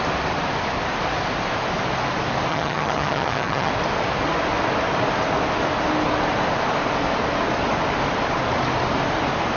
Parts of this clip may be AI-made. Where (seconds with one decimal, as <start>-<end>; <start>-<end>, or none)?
2.5-3.7